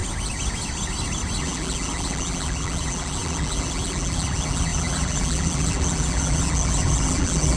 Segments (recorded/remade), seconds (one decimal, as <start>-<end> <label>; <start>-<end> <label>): 0.0-1.4 recorded; 1.4-7.6 remade